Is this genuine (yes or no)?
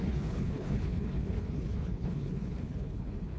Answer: no